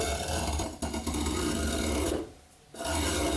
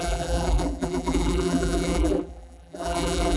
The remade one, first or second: second